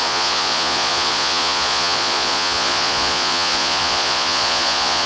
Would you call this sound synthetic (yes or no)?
yes